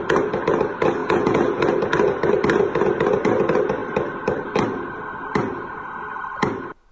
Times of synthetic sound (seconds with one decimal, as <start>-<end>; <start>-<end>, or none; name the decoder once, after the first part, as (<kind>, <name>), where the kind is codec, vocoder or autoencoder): 1.0-1.6 (vocoder, Vocos)